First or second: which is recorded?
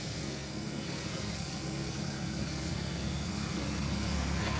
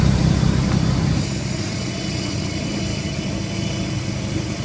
second